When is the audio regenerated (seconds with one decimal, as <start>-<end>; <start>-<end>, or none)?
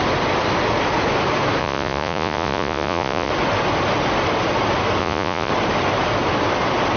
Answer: 1.6-3.3; 5.0-5.5